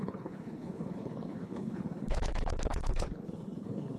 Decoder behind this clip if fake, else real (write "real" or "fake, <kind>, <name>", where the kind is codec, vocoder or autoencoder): fake, codec, HILCodec